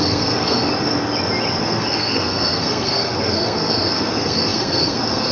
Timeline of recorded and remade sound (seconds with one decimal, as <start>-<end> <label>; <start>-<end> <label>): 0.0-0.7 remade; 0.7-1.6 recorded; 1.6-5.3 remade